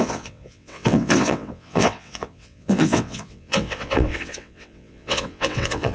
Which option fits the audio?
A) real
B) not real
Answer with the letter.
B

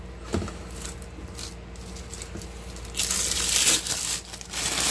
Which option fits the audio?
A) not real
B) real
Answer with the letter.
B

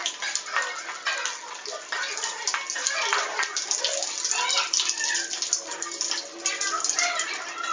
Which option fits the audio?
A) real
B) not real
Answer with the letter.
A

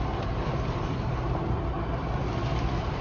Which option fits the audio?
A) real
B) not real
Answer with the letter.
A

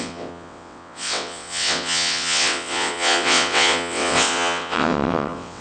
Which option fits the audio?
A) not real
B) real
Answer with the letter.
A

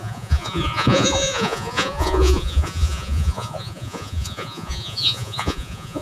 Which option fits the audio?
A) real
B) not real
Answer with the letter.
B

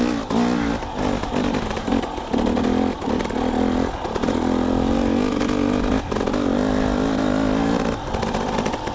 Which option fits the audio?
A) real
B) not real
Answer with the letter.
A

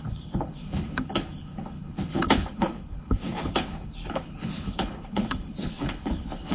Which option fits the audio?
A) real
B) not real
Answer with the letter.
B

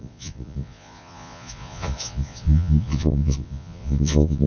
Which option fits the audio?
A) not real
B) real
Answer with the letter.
A